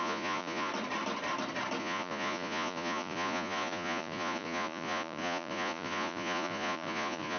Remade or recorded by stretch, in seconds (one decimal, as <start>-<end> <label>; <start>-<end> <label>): 0.0-0.7 remade; 0.7-1.8 recorded; 1.8-7.4 remade